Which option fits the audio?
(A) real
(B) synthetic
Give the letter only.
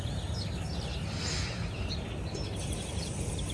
A